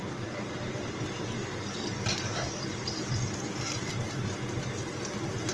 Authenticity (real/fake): real